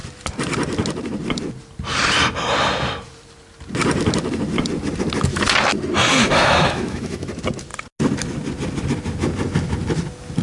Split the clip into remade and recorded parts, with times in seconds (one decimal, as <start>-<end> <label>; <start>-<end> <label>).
0.0-6.1 recorded; 6.1-7.3 remade; 7.3-10.4 recorded